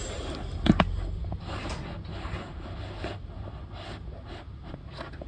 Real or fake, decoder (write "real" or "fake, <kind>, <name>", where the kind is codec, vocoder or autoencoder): real